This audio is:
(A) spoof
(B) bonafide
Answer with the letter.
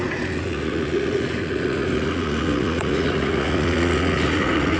A